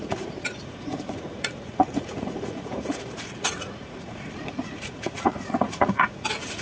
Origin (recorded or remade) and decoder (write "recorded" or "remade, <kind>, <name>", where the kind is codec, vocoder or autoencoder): remade, vocoder, Vocos